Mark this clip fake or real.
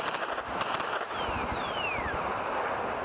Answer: real